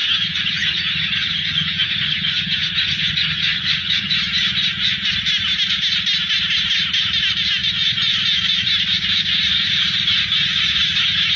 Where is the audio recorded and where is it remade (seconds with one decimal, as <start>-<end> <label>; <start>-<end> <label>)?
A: 0.0-4.1 remade; 4.1-11.4 recorded